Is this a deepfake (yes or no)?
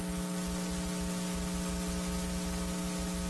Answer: no